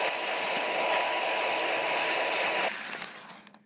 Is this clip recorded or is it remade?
recorded